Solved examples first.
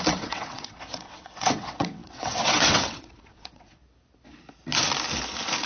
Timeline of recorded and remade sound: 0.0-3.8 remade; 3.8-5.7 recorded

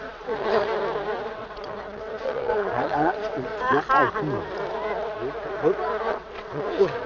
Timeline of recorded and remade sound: 0.0-0.7 remade; 0.7-1.3 recorded; 1.3-3.5 remade; 3.5-6.1 recorded; 6.1-7.1 remade